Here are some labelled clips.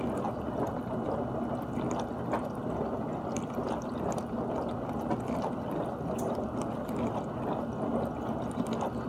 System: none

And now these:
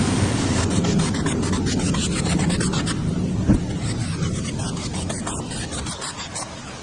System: none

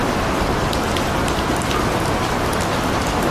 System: none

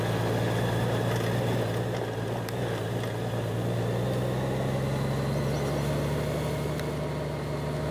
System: none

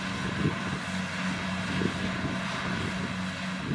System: none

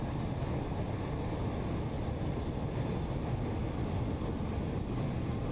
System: none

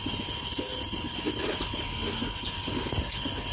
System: none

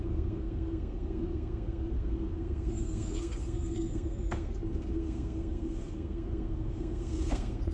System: codec, SNAC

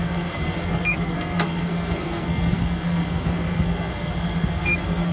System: codec, SNAC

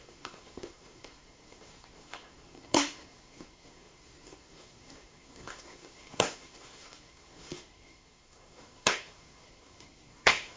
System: codec, SNAC